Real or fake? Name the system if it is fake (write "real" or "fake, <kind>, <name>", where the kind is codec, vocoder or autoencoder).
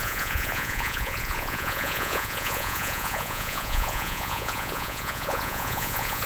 fake, vocoder, Vocos